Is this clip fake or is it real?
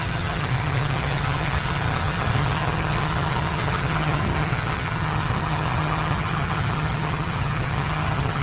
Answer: fake